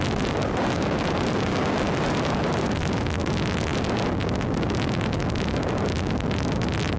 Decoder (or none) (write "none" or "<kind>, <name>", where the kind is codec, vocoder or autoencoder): none